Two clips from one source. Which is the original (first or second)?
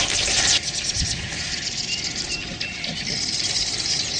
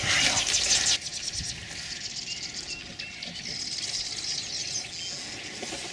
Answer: second